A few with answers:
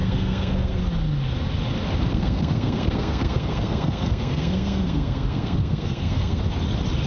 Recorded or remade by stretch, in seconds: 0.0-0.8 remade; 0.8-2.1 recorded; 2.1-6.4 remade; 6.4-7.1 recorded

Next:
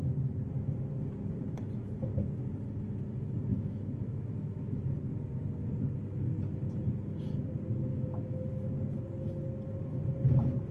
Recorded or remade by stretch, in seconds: 0.0-3.5 recorded; 3.5-4.8 remade; 4.8-7.7 recorded; 7.7-8.5 remade; 8.5-10.7 recorded

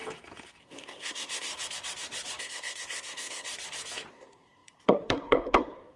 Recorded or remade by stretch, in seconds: 0.0-0.6 recorded; 0.6-1.5 remade; 1.5-2.4 recorded; 2.4-3.5 remade; 3.5-4.1 recorded; 4.1-6.0 remade

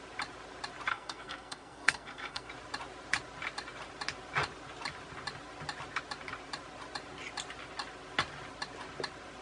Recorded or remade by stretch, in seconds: 0.0-0.9 recorded; 0.9-2.5 remade; 2.5-9.4 recorded

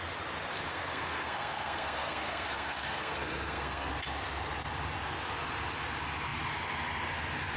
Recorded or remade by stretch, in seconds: 0.0-0.7 recorded; 0.7-3.9 remade; 3.9-7.6 recorded

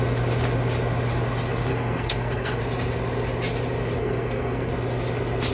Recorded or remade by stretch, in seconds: 0.0-1.7 recorded; 1.7-2.6 remade; 2.6-4.0 recorded; 4.0-4.7 remade; 4.7-5.5 recorded